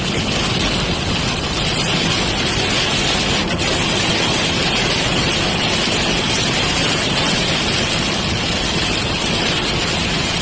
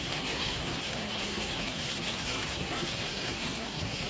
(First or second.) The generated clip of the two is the second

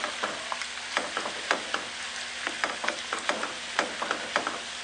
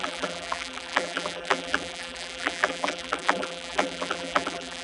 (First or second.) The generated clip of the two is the second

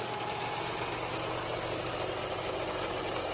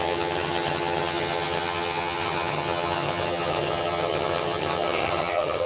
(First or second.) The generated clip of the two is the second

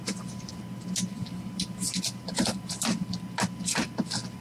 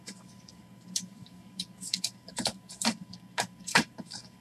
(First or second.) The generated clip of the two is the second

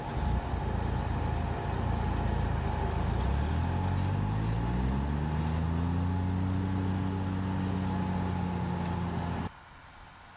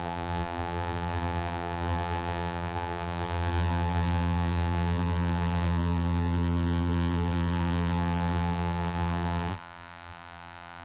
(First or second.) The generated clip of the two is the second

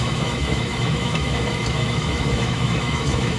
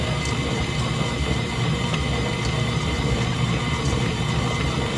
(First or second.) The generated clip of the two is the first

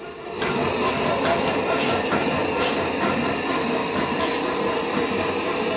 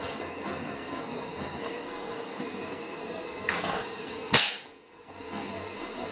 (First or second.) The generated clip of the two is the second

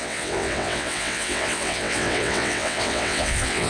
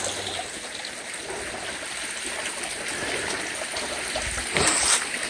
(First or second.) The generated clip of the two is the first